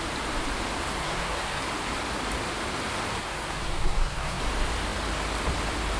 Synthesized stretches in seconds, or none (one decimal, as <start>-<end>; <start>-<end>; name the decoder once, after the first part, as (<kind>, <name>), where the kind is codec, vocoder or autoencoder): 1.0-1.6 (codec, SNAC); 3.2-4.4